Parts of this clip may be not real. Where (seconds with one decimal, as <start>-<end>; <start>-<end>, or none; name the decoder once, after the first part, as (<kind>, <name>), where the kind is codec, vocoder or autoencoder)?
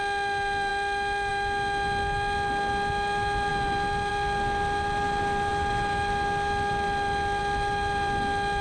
none